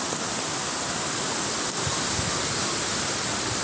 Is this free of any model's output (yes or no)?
yes